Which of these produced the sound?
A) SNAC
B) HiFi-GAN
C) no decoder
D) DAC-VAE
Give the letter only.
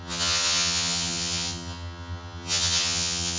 B